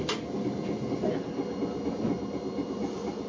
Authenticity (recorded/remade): recorded